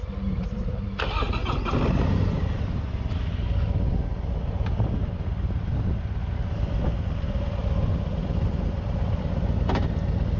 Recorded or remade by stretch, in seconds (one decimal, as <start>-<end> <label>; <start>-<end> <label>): 0.0-10.4 recorded

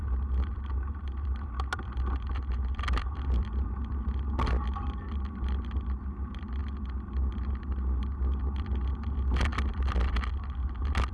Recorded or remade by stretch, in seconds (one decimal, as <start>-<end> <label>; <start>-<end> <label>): 0.0-11.1 recorded